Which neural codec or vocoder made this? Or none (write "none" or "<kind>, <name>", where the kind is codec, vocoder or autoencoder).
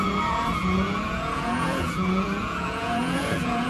vocoder, Vocos